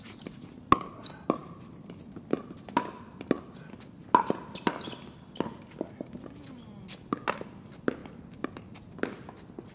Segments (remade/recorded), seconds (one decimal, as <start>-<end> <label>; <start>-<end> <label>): 0.0-9.7 recorded